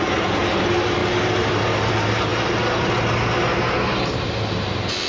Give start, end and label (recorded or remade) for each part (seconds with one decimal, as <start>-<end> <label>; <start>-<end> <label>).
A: 0.0-5.1 recorded